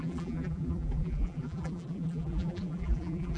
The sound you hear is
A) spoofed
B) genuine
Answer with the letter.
A